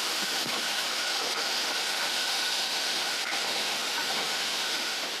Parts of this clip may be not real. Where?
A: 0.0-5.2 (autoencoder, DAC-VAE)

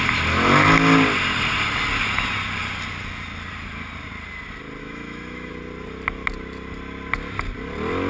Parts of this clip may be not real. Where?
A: 4.8-5.5 (autoencoder, DAC-VAE)

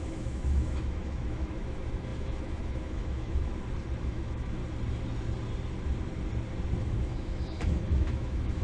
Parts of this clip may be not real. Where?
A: 0.0-3.5 (autoencoder, DAC-VAE); 4.0-4.6; 6.8-8.6

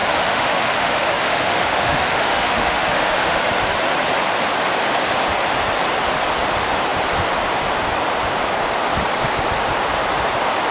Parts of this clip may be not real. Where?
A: 0.0-3.4 (autoencoder, DAC-VAE)